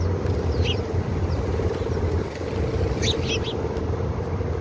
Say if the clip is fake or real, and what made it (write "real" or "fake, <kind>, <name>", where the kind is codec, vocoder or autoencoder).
real